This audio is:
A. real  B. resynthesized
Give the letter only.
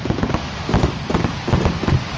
A